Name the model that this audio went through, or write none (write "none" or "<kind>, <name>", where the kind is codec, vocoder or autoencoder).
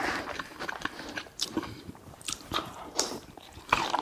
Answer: vocoder, BigVGAN v2